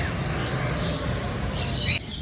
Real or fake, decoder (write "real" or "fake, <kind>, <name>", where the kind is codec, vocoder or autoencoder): real